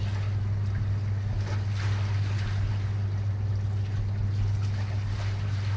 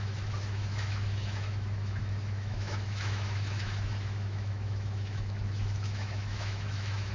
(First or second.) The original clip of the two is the first